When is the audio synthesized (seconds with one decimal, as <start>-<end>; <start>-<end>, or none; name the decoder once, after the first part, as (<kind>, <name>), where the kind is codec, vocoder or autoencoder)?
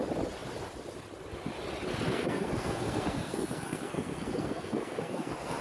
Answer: 2.1-5.6 (codec, SNAC)